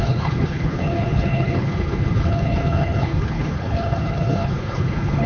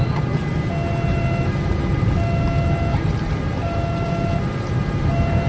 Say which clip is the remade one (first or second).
first